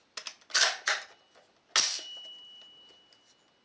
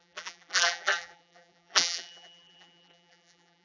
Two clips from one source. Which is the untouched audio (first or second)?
first